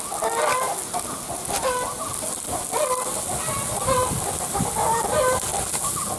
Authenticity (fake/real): real